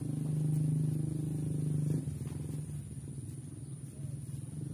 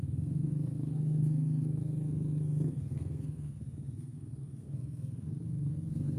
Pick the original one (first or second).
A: first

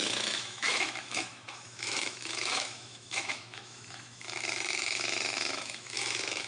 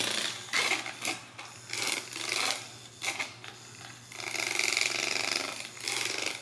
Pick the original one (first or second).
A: second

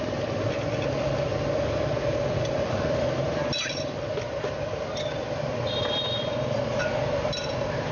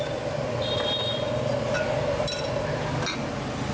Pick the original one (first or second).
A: second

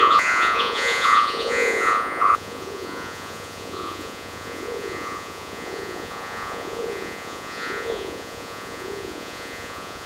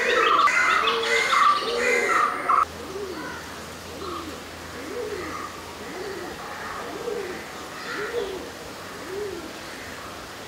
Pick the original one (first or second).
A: second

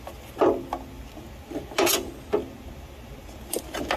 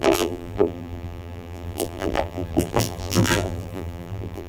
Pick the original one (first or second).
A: first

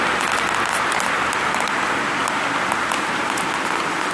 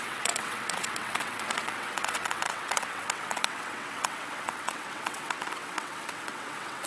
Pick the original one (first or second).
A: first